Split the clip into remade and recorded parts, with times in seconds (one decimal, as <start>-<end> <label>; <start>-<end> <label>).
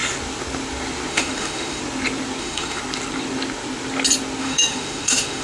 0.0-1.1 recorded; 1.1-1.8 remade; 1.8-2.4 recorded; 2.4-2.8 remade; 2.8-4.4 recorded; 4.4-5.4 remade